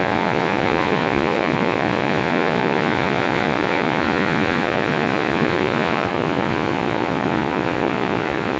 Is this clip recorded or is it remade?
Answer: remade